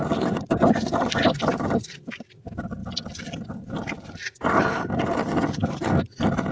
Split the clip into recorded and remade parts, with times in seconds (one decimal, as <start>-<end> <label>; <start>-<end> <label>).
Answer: 0.0-6.5 recorded